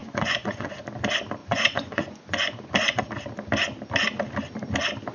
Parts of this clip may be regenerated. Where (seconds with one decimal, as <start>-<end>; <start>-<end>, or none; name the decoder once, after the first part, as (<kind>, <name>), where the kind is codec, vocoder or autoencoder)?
0.0-0.8 (vocoder, Vocos); 1.4-3.0